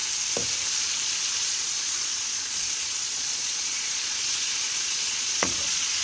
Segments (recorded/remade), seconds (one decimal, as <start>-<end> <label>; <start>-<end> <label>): 0.0-1.4 recorded; 1.4-6.0 remade